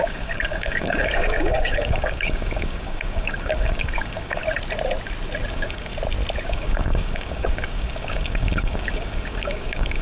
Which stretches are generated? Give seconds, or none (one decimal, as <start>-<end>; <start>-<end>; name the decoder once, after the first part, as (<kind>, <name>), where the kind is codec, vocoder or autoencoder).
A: 0.0-4.4 (codec, DAC); 5.5-5.9; 6.5-10.0